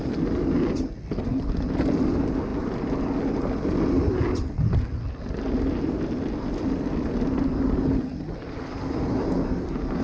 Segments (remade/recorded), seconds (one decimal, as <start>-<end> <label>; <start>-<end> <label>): 0.0-10.0 recorded